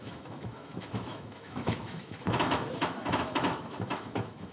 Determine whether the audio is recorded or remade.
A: remade